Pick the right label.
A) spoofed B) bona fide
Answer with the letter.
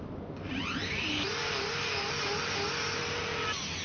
B